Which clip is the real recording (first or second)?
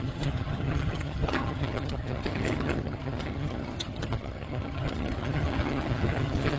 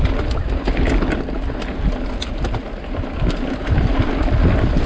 second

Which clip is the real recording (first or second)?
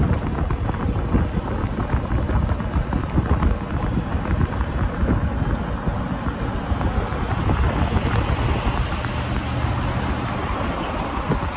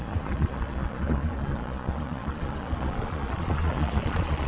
first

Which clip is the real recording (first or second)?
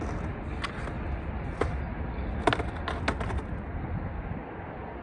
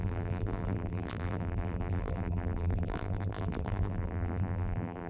first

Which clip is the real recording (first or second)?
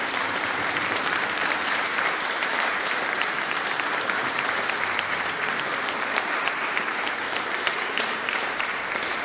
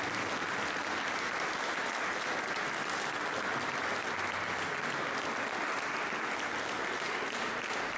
second